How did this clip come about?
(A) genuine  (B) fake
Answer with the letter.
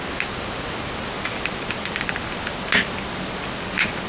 A